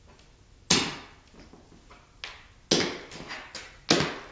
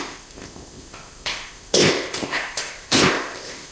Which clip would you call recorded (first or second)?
first